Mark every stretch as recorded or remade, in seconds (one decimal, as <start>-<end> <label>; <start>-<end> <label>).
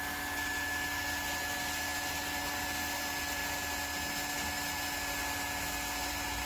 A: 0.0-6.5 recorded